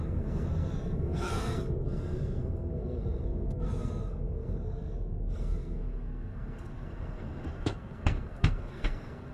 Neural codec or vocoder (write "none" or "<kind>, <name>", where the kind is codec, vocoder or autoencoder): codec, SNAC